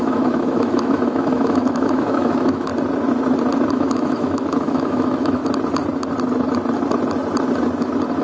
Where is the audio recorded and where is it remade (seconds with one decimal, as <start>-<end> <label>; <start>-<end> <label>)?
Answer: 0.0-2.7 remade; 2.7-3.7 recorded; 3.7-5.4 remade; 5.4-8.2 recorded